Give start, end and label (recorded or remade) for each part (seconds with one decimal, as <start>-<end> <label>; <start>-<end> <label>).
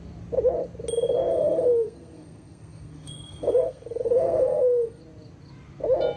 0.0-1.3 recorded; 1.3-5.0 remade; 5.0-6.2 recorded